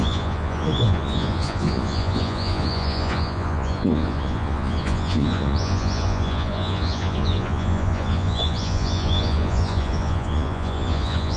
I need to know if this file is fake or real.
fake